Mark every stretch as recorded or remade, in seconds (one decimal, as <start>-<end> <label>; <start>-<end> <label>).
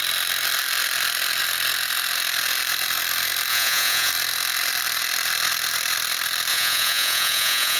0.0-3.5 recorded; 3.5-4.1 remade; 4.1-6.5 recorded; 6.5-7.8 remade